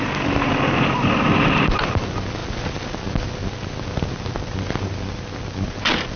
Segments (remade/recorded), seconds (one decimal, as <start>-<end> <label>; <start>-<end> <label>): 0.0-6.2 recorded